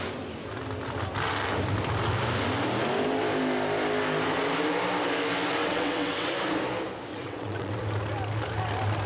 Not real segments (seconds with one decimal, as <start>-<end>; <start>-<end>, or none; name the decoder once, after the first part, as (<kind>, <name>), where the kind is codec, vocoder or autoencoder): 5.6-6.3 (vocoder, WaveNeXt); 7.1-7.7